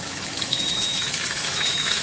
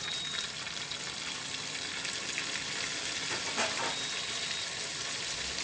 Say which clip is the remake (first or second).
first